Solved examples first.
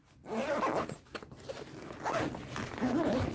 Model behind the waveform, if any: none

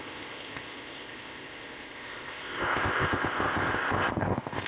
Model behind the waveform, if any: codec, ZipCodec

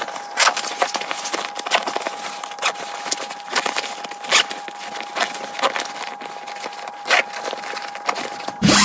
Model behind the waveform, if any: none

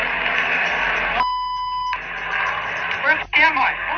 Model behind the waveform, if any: none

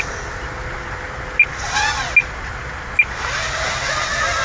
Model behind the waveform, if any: none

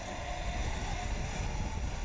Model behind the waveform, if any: none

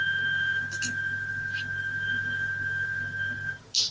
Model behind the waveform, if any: none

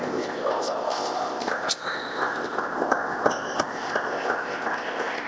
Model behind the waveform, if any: codec, ZipCodec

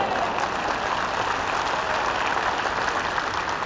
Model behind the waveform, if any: none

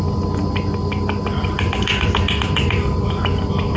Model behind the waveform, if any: none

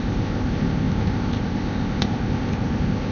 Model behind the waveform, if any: codec, ZipCodec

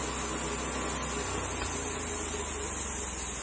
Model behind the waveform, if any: none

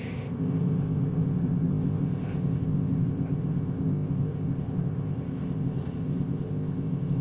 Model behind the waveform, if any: codec, ZipCodec